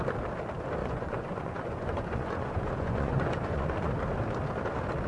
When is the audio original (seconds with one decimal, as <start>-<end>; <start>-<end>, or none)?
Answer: 0.0-0.8; 3.9-5.1

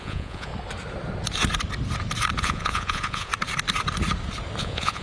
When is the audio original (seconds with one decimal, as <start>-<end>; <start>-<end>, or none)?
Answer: 0.5-2.4; 3.3-4.6

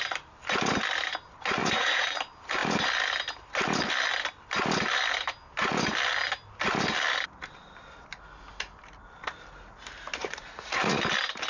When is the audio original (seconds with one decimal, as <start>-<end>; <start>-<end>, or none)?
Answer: 0.0-1.6; 2.2-10.2; 11.0-11.5

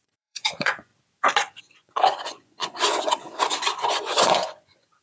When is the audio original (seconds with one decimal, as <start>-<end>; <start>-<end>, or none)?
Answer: 0.9-1.6

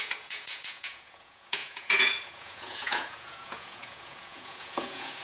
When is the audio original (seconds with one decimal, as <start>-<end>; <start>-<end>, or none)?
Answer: none

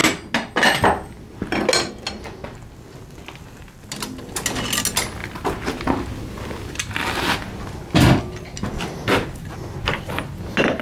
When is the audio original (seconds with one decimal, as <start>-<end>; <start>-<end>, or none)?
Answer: 0.0-10.8